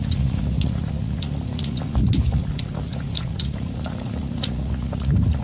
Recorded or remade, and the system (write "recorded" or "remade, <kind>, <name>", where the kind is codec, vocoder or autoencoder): remade, vocoder, Vocos